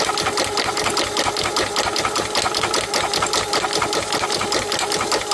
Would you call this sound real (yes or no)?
yes